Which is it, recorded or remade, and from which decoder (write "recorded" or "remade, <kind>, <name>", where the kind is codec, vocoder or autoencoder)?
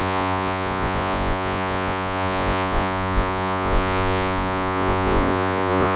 remade, vocoder, Vocos